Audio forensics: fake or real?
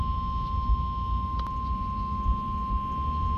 real